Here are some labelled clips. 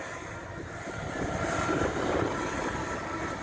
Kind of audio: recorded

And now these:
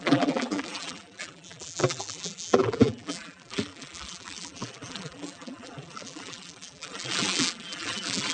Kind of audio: remade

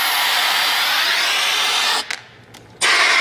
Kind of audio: recorded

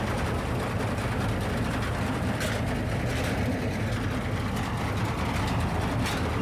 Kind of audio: recorded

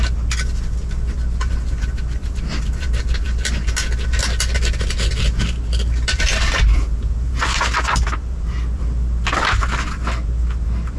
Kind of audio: recorded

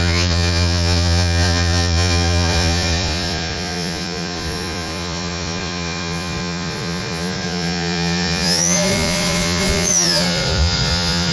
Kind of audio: remade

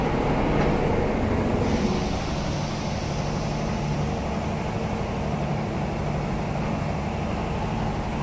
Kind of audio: recorded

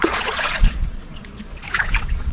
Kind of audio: remade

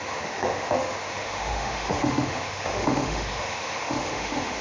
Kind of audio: remade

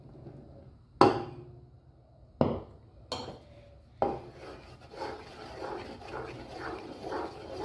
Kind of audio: recorded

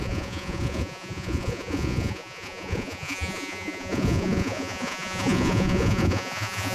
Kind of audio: remade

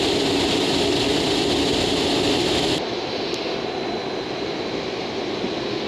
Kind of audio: recorded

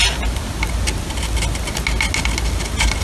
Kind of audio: recorded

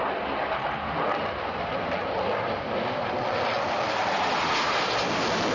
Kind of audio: recorded